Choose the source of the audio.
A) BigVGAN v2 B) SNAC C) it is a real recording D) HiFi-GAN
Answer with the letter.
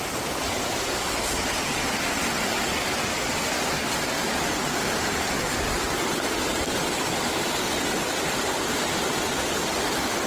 C